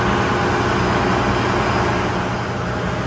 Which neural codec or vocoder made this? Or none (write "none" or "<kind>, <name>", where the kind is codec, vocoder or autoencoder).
none